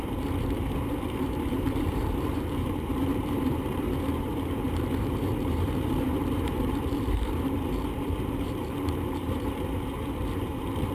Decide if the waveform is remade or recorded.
remade